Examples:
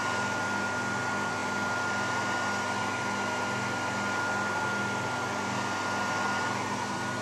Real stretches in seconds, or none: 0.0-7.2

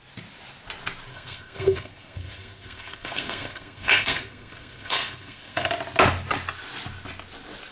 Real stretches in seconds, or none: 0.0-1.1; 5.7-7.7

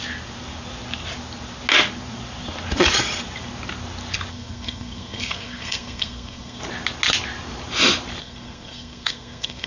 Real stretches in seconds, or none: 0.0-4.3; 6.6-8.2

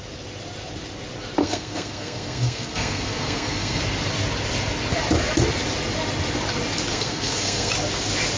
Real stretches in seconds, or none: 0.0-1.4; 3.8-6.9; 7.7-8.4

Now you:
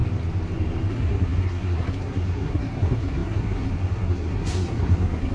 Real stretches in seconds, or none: 0.0-0.9